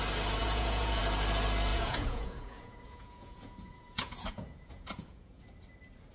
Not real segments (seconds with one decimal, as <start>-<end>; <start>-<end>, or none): 0.4-1.0; 1.7-5.4